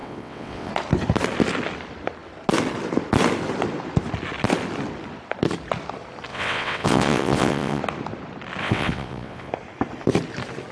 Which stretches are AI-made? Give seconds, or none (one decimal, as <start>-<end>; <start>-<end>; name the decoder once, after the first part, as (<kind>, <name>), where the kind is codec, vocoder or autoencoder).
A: 0.0-0.7 (vocoder, WaveNeXt); 6.3-7.8; 8.6-9.5